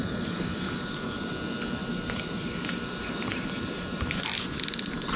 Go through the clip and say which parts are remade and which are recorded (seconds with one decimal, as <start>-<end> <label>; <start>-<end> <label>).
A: 0.0-1.3 remade; 1.3-1.8 recorded; 1.8-4.2 remade; 4.2-5.2 recorded